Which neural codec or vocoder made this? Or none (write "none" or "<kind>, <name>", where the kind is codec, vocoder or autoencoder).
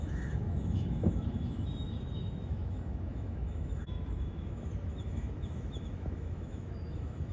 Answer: autoencoder, DAC-VAE